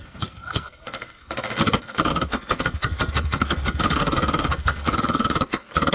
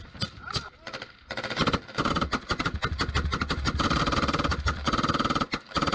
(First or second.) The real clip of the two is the second